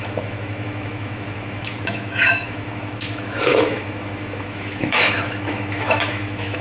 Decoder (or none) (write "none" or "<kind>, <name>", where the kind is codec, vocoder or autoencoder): autoencoder, DAC-VAE